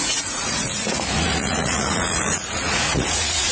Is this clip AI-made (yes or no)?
yes